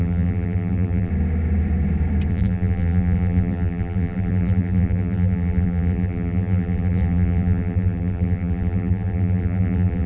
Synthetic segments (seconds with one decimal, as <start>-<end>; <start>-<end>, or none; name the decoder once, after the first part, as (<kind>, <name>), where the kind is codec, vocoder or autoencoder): 0.0-1.1 (vocoder, BigVGAN v2); 2.3-10.1